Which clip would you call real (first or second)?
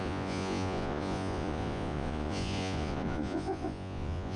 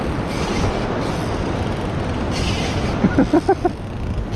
second